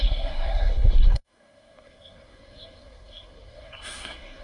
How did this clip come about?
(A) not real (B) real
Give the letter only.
A